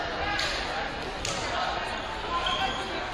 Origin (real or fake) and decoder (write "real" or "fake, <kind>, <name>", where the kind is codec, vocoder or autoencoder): real